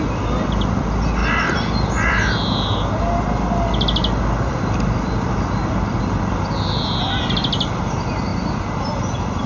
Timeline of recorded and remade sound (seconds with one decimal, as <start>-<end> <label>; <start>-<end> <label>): 0.0-8.3 recorded; 8.3-8.9 remade; 8.9-9.5 recorded

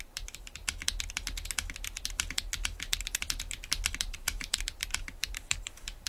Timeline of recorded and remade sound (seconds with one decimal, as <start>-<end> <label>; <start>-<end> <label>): 0.0-0.6 remade; 0.6-4.0 recorded; 4.0-6.1 remade

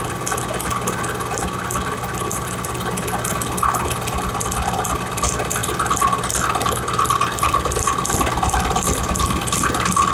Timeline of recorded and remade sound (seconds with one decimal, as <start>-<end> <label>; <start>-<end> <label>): 0.0-10.1 recorded

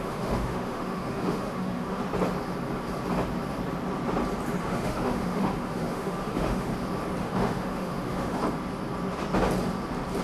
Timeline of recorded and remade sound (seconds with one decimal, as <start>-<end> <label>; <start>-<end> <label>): 0.0-2.0 remade; 2.0-4.6 recorded; 4.6-6.7 remade; 6.7-7.2 recorded; 7.2-8.4 remade; 8.4-10.2 recorded